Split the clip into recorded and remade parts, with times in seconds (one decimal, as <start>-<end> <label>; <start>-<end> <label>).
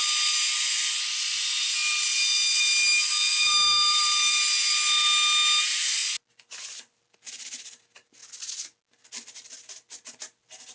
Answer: 0.0-10.7 recorded